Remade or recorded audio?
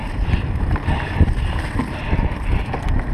recorded